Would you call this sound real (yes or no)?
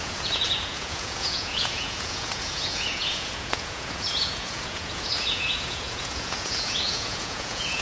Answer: no